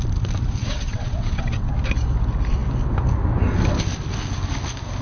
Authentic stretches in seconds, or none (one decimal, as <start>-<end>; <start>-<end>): 0.0-0.6; 1.7-5.0